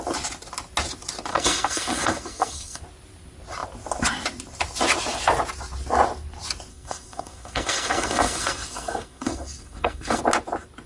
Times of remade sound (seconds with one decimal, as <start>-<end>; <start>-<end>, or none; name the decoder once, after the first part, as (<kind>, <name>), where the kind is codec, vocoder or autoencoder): 1.3-2.8 (codec, SNAC); 6.7-10.2